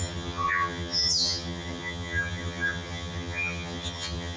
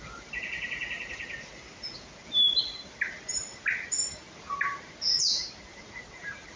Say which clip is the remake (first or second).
first